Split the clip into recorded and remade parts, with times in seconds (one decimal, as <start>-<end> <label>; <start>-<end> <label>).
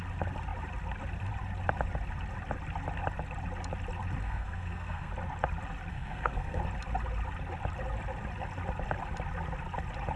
0.0-4.2 recorded; 4.2-5.1 remade; 5.1-5.9 recorded; 5.9-6.6 remade; 6.6-10.2 recorded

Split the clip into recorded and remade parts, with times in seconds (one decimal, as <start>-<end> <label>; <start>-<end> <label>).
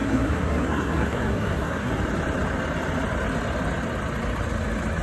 0.0-1.9 remade; 1.9-5.0 recorded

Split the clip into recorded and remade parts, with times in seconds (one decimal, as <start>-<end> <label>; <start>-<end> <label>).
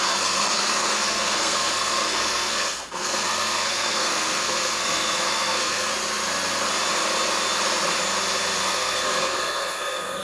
0.0-5.9 remade; 5.9-8.6 recorded; 8.6-10.2 remade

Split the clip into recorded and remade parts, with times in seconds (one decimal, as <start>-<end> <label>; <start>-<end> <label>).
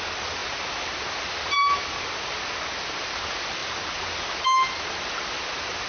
0.0-5.9 recorded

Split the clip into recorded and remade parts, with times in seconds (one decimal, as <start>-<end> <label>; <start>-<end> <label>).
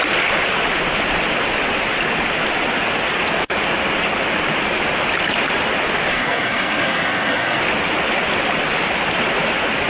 0.0-6.1 recorded; 6.1-7.6 remade; 7.6-9.9 recorded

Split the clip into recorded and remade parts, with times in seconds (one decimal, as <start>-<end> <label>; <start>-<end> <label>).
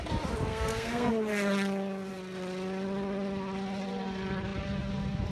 0.0-0.5 recorded; 0.5-1.1 remade; 1.1-5.3 recorded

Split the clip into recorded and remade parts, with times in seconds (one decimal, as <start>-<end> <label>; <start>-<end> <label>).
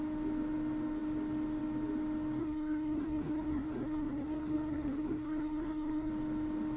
0.0-2.4 recorded; 2.4-6.1 remade; 6.1-6.8 recorded